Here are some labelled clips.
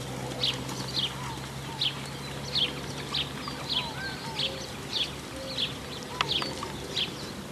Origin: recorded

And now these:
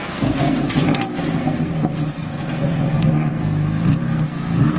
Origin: remade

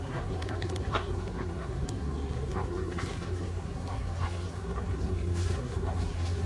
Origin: remade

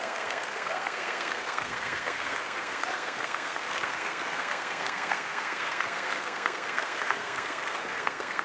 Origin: remade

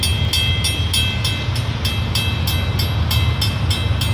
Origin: recorded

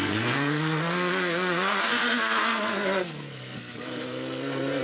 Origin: remade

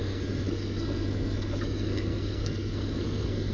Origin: remade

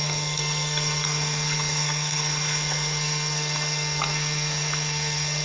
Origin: remade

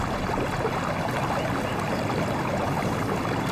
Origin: recorded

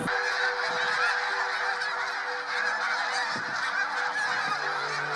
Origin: recorded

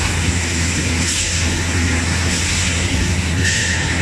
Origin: remade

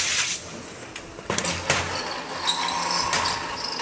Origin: recorded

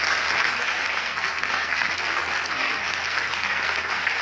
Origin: remade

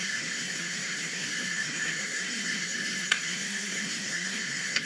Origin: remade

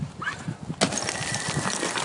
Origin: recorded